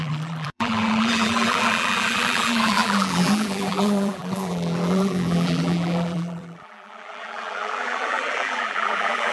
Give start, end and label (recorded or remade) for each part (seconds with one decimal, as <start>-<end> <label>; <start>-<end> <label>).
0.0-9.3 remade